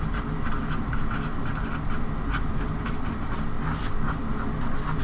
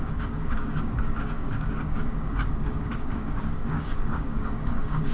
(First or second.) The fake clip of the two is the second